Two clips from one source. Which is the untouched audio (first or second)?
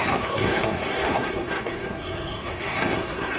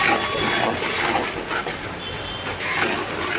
second